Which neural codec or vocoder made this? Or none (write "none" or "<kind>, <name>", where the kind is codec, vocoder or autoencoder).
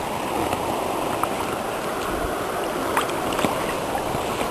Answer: none